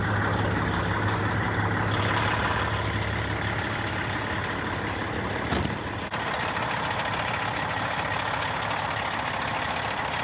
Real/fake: real